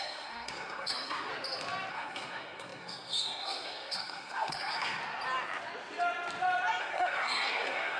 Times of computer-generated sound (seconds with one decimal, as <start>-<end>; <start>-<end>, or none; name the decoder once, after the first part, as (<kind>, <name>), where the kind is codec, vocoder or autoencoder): 0.0-1.3 (codec, SNAC); 1.9-5.0; 6.8-8.0

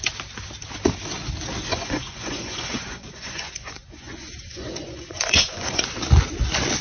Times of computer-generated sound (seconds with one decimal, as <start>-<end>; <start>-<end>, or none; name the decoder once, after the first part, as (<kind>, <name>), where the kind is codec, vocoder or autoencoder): 1.7-5.8 (vocoder, Vocos)